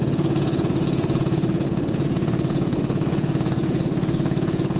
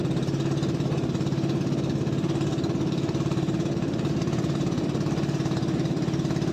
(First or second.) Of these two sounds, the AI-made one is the first